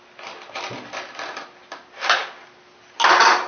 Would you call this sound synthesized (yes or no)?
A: no